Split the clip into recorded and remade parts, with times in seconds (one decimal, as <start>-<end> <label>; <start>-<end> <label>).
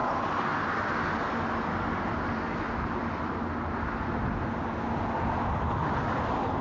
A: 0.0-6.6 recorded